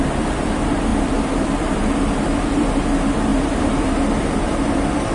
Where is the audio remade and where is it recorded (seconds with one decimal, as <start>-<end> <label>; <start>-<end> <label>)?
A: 0.0-5.1 remade